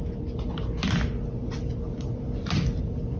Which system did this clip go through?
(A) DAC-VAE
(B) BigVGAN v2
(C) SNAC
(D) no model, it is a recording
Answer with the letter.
D